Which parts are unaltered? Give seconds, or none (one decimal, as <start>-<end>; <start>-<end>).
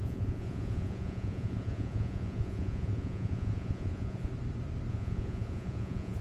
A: 4.3-4.9